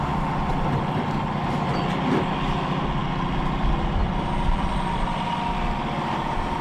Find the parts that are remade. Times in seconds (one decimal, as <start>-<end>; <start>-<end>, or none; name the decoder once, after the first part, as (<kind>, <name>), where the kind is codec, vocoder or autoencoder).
none